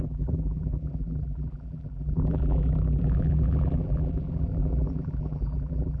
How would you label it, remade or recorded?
remade